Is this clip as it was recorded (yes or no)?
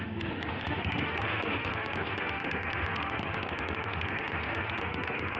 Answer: no